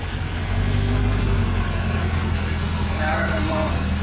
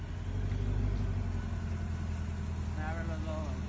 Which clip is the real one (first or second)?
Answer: second